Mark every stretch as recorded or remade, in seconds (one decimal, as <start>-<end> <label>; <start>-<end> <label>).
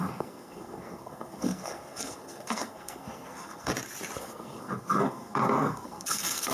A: 0.0-3.7 remade; 3.7-4.2 recorded; 4.2-6.5 remade